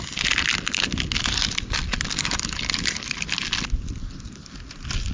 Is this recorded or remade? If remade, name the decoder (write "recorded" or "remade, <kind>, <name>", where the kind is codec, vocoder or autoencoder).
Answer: recorded